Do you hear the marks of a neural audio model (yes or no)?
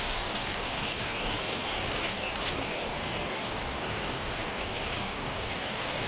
yes